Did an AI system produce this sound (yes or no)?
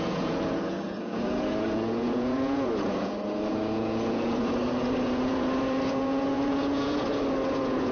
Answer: yes